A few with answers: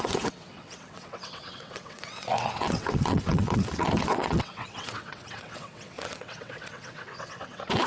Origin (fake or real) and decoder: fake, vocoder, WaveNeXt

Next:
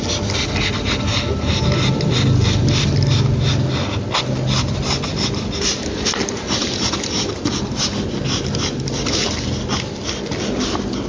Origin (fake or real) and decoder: real